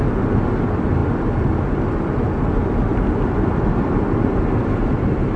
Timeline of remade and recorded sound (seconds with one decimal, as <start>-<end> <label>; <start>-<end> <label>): 0.0-2.9 recorded; 2.9-3.7 remade; 3.7-5.4 recorded